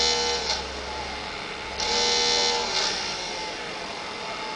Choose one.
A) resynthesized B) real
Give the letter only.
B